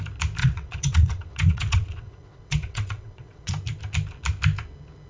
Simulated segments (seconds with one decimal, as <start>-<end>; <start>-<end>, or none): 0.4-3.5